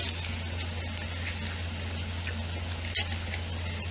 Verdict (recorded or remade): recorded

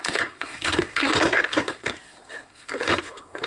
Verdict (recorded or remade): remade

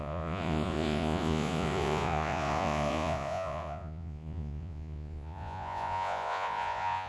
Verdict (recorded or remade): remade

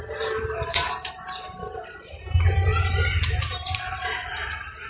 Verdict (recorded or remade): remade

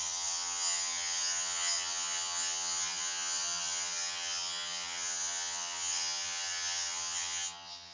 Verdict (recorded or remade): remade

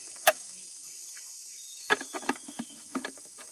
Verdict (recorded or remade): remade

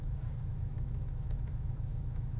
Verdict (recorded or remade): remade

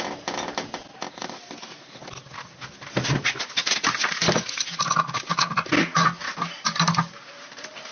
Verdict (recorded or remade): recorded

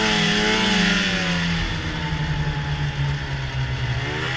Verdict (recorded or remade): recorded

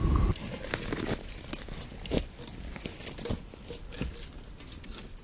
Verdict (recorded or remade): recorded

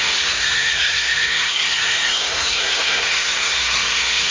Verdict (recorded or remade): remade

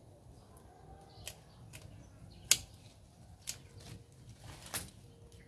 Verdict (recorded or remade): recorded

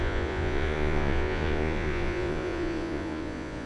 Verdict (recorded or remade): remade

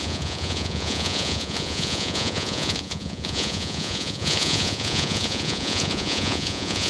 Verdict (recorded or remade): remade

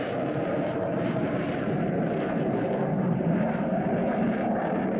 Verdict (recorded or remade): remade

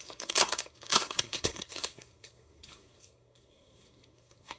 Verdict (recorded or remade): remade